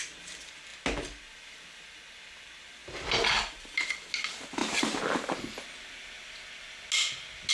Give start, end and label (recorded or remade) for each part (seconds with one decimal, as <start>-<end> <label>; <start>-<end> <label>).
0.0-7.5 recorded